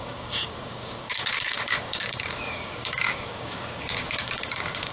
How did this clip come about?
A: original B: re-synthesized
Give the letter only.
B